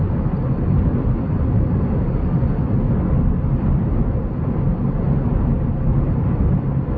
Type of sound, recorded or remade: recorded